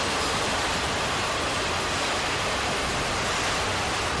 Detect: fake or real real